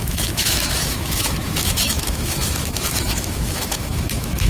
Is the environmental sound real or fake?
fake